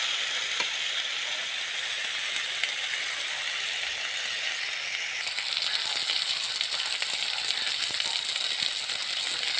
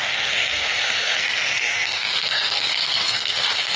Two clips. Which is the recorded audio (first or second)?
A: first